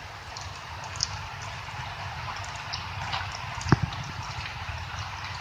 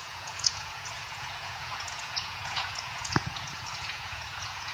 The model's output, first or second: second